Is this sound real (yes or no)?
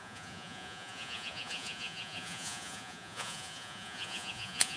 no